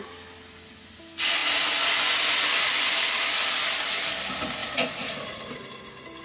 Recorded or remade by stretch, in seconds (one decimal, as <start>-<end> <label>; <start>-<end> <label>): 0.0-4.6 recorded; 4.6-5.4 remade; 5.4-6.2 recorded